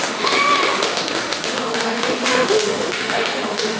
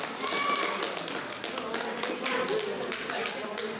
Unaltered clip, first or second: second